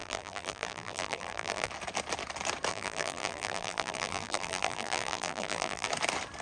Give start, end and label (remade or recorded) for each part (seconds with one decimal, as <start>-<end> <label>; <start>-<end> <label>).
0.0-1.7 remade; 1.7-2.7 recorded; 2.7-5.9 remade; 5.9-6.4 recorded